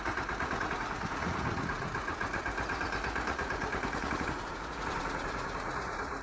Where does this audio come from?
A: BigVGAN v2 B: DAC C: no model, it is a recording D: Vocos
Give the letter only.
D